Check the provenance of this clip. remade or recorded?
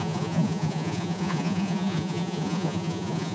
remade